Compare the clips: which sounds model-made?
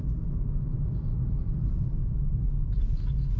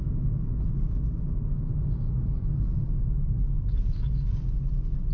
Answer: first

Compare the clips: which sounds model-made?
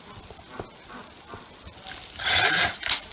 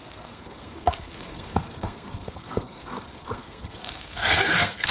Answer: second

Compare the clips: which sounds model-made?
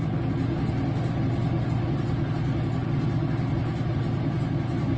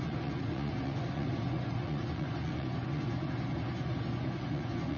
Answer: second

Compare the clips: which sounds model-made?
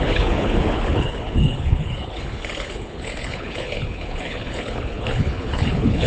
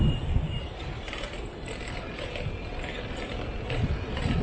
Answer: first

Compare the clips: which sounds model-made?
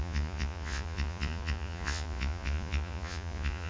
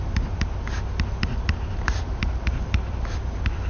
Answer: first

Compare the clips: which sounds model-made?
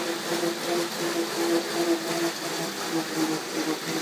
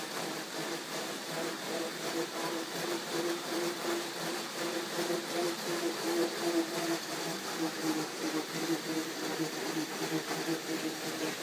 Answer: second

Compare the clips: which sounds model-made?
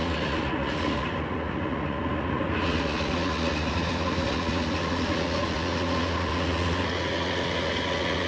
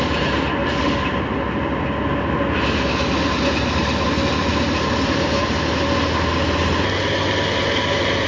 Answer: first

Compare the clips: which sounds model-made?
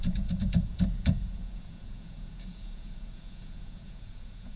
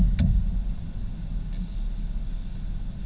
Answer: first